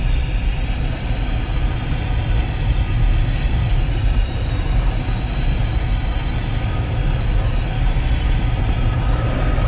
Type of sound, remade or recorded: recorded